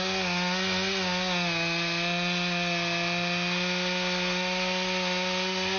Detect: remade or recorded recorded